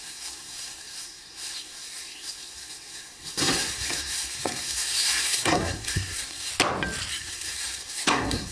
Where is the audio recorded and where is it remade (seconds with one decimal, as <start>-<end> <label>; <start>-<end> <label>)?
0.0-6.5 remade; 6.5-7.1 recorded; 7.1-8.5 remade